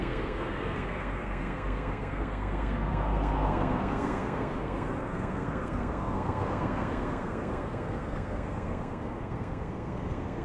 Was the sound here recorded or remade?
remade